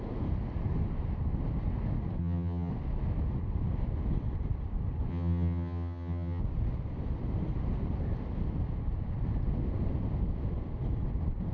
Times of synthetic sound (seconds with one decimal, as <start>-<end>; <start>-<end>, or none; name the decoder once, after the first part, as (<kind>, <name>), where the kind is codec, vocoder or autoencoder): 2.2-2.7 (vocoder, HiFi-GAN); 5.1-6.4